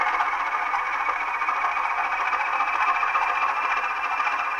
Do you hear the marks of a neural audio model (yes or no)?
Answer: no